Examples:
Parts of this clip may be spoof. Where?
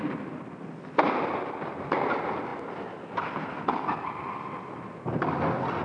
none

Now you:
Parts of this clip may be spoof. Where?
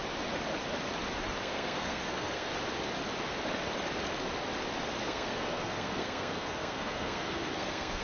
1.4-2.5 (codec, SNAC); 5.0-8.0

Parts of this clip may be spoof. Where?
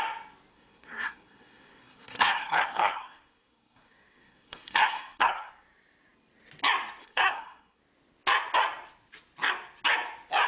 0.5-5.5 (codec, SNAC); 7.0-7.8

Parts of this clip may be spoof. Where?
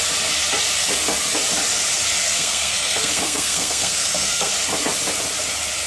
2.2-4.5 (codec, SNAC)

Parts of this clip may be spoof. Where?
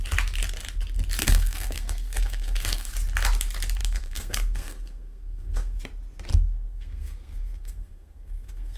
1.2-2.9 (codec, SNAC); 3.8-5.8; 6.3-8.8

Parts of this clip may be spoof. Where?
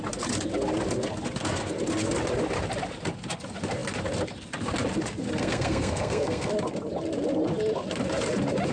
5.4-6.5 (codec, SNAC)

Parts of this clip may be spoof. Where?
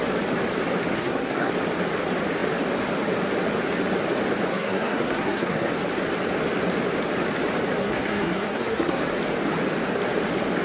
0.9-1.5 (codec, SNAC); 4.5-5.7; 7.8-9.0